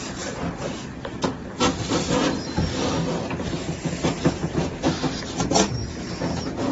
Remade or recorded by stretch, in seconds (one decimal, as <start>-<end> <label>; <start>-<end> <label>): 0.0-5.8 recorded; 5.8-6.7 remade